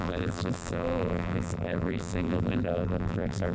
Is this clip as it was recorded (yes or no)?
no